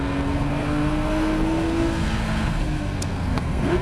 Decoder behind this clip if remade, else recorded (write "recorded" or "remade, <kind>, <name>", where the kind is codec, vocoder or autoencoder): remade, codec, SNAC